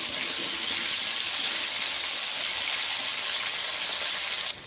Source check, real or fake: real